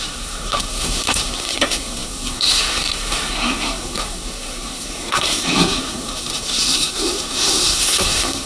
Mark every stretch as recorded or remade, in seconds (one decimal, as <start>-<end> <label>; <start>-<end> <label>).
0.0-8.5 remade